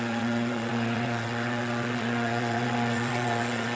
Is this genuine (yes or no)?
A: no